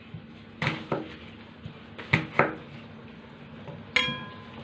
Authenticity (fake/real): real